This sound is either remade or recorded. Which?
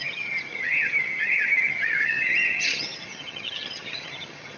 remade